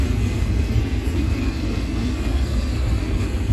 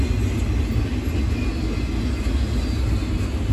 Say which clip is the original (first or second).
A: second